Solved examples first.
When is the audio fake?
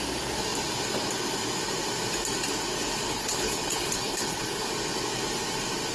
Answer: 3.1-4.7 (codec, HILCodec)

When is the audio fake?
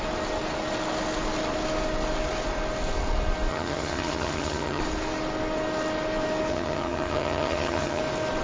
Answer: 3.5-4.8 (vocoder, HiFi-GAN); 6.5-8.0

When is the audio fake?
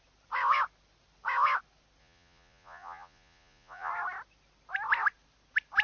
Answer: 2.0-3.9 (vocoder, Vocos)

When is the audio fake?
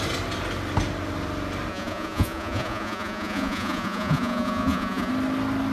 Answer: 1.7-5.1 (vocoder, Vocos)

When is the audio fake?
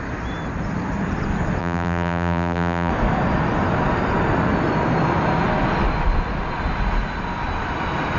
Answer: 1.6-2.9 (vocoder, BigVGAN v2)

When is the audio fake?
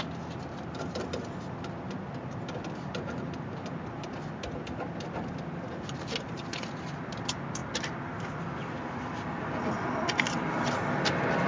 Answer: none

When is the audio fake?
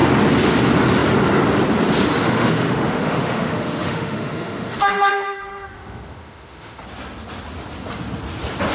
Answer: 2.2-6.8 (autoencoder, DAC-VAE)